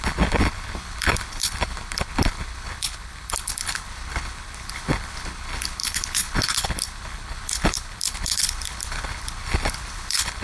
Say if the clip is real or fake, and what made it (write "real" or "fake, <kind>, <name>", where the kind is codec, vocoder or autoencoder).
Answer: fake, codec, HILCodec